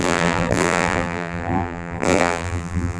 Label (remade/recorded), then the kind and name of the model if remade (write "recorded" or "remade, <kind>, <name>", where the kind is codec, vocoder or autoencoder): remade, vocoder, BigVGAN v2